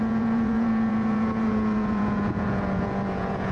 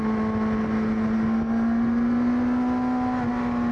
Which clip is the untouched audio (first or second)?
second